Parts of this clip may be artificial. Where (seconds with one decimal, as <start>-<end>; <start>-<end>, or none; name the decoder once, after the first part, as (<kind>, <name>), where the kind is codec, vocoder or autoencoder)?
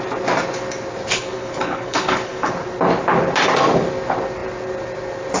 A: 1.1-2.5 (codec, HILCodec)